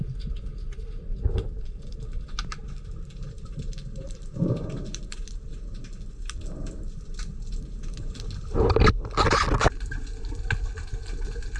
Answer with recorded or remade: recorded